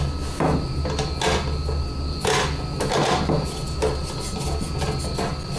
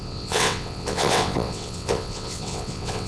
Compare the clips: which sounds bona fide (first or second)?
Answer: first